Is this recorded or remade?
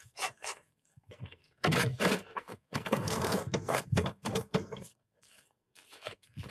remade